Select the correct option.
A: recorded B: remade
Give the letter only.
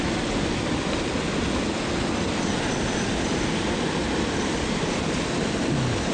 A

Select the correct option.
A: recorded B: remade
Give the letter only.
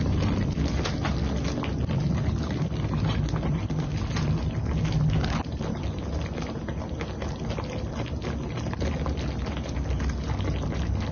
A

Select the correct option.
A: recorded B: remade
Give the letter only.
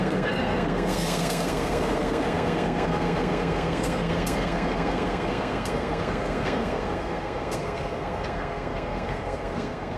B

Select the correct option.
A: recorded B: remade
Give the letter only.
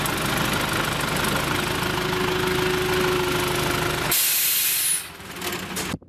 A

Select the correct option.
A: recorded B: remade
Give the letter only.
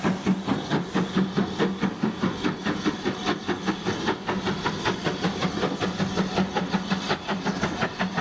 A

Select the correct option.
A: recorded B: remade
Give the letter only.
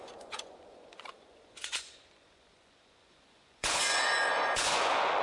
B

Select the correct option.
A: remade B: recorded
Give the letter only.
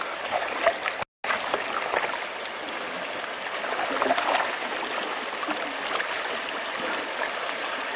B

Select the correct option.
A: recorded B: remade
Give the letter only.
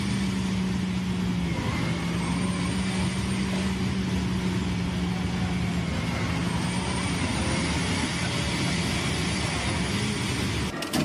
A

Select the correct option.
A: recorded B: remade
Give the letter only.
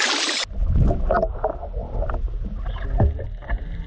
A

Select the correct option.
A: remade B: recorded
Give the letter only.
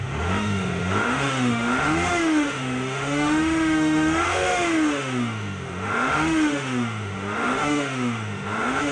A